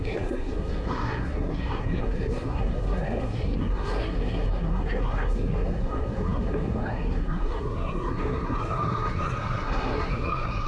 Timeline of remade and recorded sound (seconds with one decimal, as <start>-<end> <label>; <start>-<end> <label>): 0.0-10.7 remade